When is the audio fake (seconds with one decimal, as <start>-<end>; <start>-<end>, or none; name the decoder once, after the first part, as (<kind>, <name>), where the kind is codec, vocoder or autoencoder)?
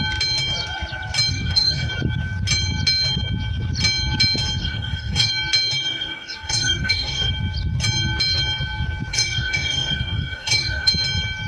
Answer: 1.3-1.9 (codec, DAC); 4.6-5.3; 5.9-7.3; 9.1-10.9